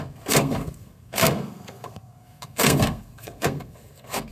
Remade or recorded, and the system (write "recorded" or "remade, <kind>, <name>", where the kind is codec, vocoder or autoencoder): remade, codec, SNAC